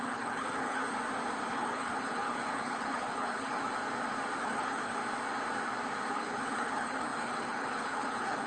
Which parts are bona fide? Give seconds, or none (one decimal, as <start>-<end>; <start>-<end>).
0.8-1.5; 3.6-4.4; 5.0-6.1